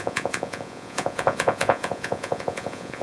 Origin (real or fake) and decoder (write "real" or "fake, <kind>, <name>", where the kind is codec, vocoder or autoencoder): fake, vocoder, Vocos